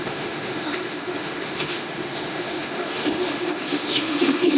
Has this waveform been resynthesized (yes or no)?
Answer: yes